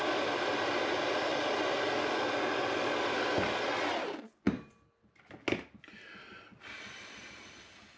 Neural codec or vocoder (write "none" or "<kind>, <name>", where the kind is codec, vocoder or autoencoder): none